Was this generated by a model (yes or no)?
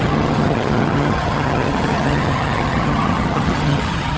yes